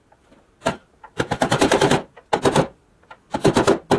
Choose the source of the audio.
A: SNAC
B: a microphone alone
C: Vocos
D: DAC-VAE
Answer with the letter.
B